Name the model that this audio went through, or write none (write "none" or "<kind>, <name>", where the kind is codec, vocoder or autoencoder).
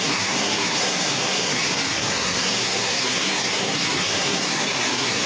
codec, SNAC